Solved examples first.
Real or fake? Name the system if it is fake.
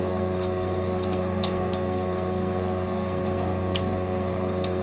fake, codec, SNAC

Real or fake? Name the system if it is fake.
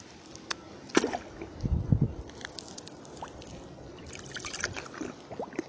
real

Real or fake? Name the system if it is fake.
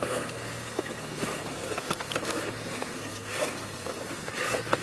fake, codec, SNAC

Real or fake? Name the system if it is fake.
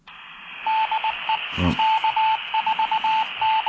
real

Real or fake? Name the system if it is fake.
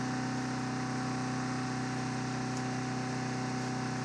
real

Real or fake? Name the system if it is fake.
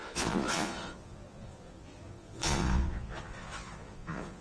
fake, vocoder, Vocos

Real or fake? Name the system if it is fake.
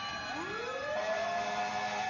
real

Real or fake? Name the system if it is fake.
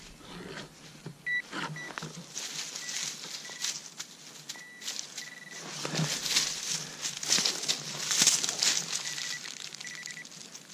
real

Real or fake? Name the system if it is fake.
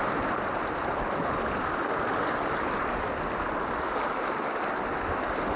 real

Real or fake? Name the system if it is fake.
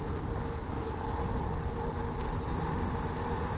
real